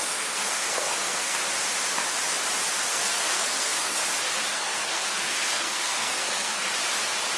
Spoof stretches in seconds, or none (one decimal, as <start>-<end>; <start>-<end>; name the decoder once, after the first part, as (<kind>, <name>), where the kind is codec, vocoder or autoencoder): 0.0-1.4 (codec, SNAC); 2.9-4.0; 4.5-6.6